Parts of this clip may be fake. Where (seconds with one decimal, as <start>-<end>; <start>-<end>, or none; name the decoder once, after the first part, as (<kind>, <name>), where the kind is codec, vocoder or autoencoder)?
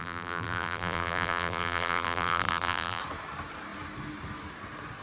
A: 0.0-3.0 (vocoder, BigVGAN v2)